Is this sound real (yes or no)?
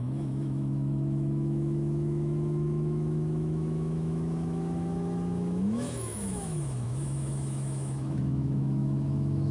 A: no